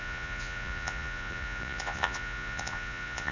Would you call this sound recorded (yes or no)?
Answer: no